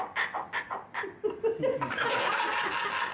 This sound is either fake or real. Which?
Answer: real